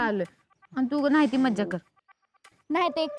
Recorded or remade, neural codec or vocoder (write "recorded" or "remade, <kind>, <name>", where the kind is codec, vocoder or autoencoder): recorded